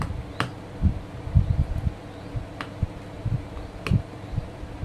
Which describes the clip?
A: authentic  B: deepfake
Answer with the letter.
A